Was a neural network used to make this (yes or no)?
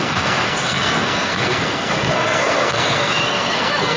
yes